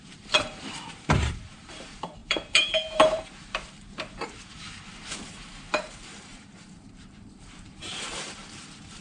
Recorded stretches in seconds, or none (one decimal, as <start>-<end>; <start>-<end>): none